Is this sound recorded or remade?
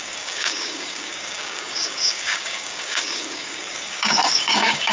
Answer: remade